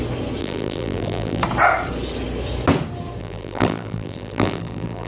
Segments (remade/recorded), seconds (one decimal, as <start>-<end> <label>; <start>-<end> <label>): 0.0-0.4 recorded; 0.4-1.4 remade; 1.4-3.2 recorded; 3.2-5.1 remade